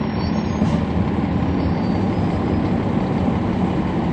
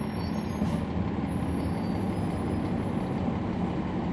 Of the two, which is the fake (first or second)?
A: first